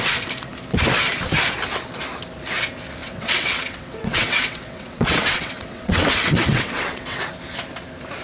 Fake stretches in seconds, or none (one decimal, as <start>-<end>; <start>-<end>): 3.0-7.2